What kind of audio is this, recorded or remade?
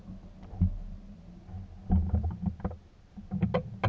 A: recorded